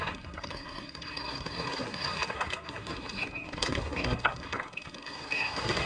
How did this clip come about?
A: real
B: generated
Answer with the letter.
B